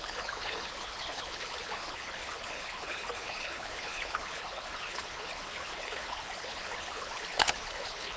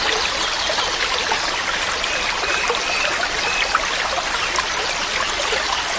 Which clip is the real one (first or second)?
second